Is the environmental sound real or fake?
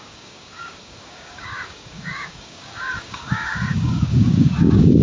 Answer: fake